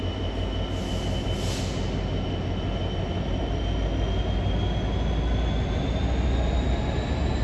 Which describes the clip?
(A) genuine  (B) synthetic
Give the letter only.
A